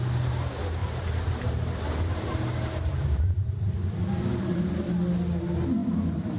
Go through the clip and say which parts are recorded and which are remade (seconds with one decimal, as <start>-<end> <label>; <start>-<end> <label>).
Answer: 0.0-0.8 recorded; 0.8-3.7 remade; 3.7-5.8 recorded; 5.8-6.4 remade